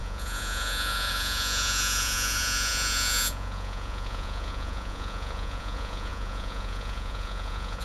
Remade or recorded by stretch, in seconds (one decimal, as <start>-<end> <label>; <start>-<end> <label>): 0.0-7.8 remade